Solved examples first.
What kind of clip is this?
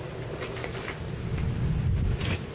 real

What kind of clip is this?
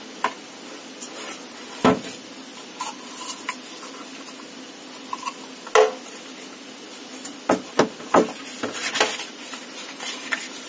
real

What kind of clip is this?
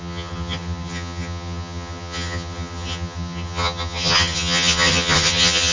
fake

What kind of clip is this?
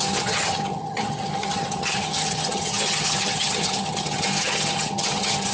fake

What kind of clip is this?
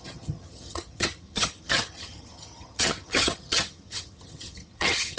fake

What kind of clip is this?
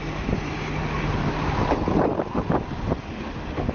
real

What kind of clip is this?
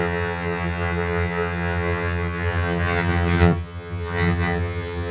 fake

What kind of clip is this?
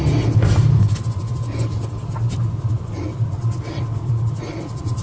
real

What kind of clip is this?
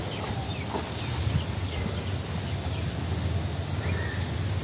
real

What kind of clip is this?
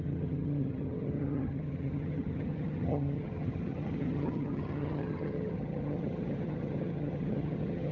fake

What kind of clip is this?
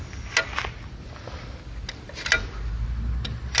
real